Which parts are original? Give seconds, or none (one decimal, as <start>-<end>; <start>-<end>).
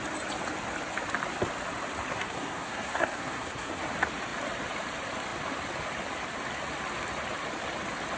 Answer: 0.0-2.1; 3.8-8.2